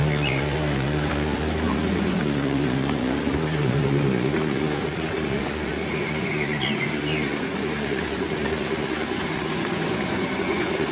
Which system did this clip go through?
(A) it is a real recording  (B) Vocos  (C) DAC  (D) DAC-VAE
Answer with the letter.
B